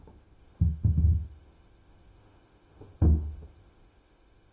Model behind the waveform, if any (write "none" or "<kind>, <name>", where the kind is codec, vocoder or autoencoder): autoencoder, DAC-VAE